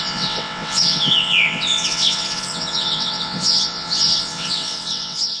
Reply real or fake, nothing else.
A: fake